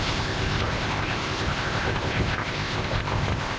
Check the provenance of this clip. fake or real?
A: fake